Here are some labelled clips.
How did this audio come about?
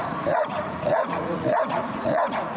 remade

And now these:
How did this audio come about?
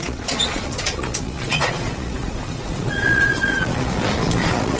remade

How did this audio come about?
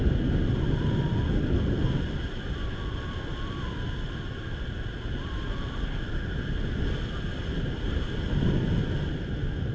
recorded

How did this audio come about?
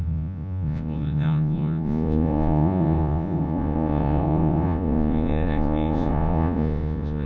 remade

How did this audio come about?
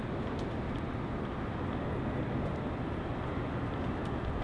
recorded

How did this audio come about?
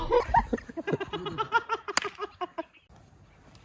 recorded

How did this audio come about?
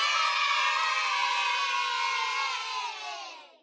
recorded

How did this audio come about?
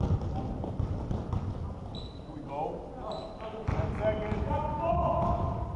recorded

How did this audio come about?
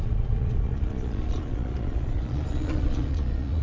remade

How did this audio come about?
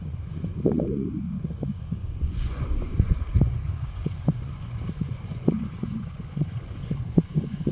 remade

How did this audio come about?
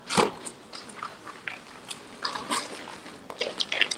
recorded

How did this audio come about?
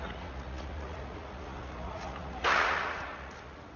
remade